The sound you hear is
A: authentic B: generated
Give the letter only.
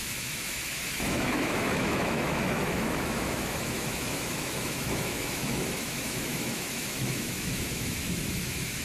B